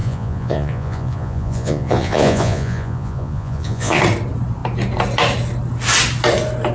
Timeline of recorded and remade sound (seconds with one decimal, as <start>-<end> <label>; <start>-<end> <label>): 0.0-4.0 remade; 4.0-6.7 recorded